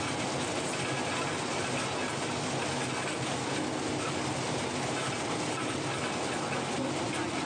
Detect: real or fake real